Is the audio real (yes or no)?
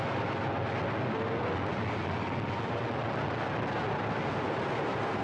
yes